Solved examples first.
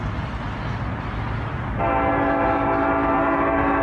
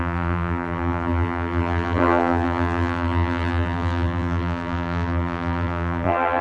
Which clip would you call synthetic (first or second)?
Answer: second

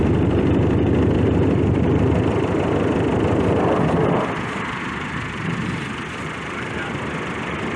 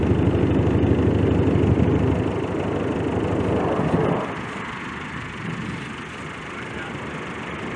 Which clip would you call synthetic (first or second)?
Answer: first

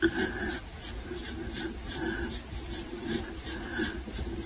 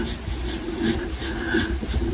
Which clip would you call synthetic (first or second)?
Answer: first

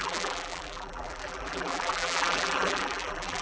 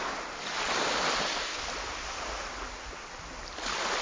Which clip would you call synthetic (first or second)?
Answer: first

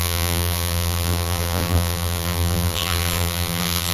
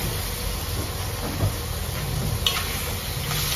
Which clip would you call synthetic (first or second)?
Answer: first